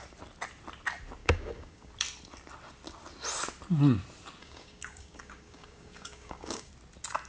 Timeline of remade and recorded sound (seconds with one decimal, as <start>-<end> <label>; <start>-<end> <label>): 0.0-1.2 recorded; 1.2-1.9 remade; 1.9-4.4 recorded; 4.4-6.7 remade; 6.7-7.3 recorded